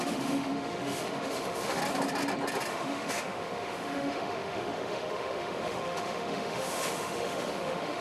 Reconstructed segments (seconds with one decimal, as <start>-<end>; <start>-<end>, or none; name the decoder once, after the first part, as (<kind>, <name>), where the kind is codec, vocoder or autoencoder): 0.0-1.8 (autoencoder, DAC-VAE); 2.7-8.0